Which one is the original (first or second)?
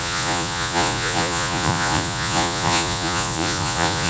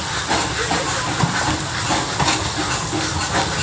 second